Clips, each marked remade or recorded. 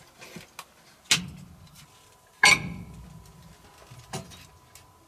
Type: recorded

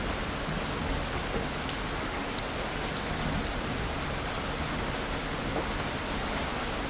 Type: recorded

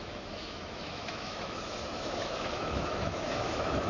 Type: remade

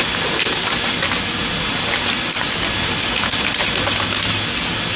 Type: recorded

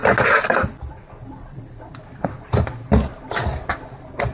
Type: recorded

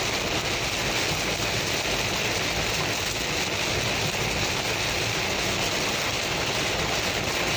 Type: recorded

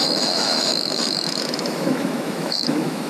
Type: remade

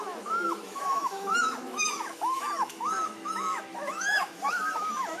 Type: remade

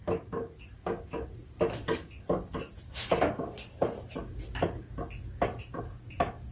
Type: recorded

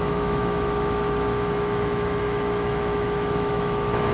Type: remade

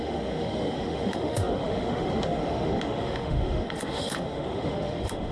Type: remade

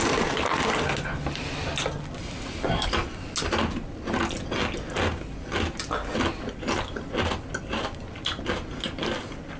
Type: recorded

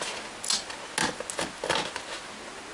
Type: recorded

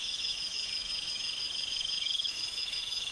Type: remade